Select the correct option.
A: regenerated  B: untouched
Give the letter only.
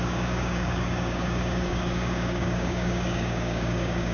A